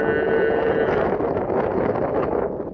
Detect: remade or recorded recorded